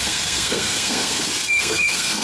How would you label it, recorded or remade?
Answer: remade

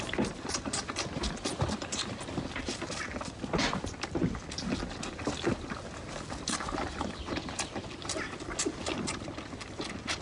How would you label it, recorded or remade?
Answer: recorded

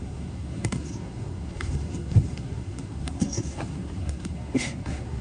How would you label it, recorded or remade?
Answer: remade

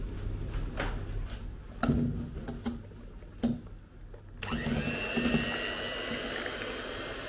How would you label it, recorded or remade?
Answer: recorded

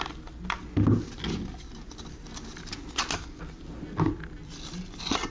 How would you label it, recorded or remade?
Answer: recorded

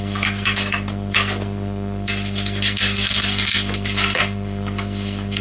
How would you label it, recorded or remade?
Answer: remade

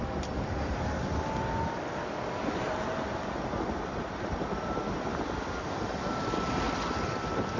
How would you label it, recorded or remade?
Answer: recorded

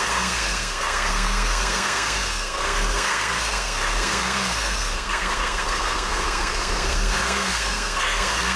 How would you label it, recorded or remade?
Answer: remade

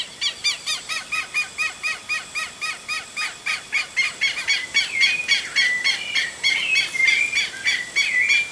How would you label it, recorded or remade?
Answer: recorded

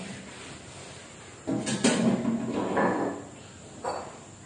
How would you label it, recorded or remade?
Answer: recorded